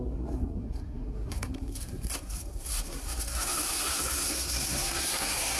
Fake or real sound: fake